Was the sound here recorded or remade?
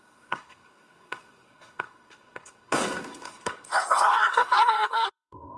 remade